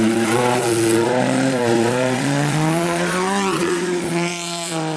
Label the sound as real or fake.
fake